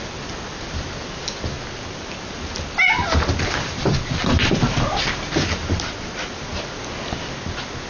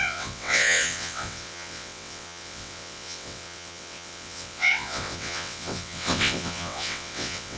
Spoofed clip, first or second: second